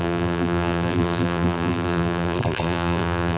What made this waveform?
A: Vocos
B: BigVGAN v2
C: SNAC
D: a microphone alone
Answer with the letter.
B